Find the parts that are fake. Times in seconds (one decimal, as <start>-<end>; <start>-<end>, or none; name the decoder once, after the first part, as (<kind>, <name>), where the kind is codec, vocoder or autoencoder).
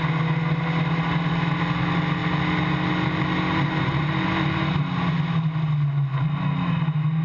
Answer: none